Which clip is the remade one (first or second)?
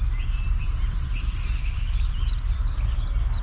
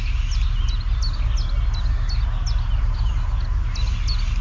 first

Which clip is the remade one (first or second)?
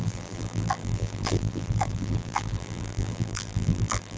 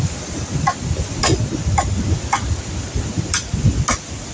first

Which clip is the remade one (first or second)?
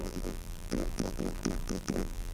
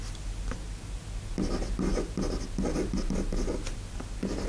first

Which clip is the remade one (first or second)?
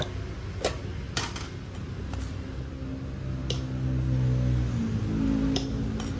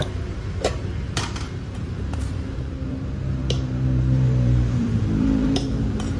second